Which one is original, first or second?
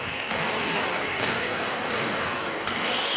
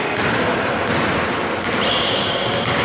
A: second